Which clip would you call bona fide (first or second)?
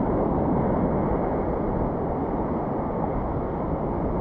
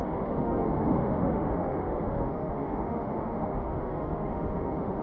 first